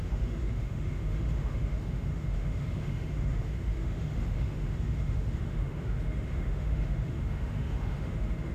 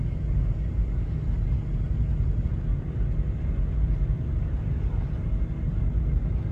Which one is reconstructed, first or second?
first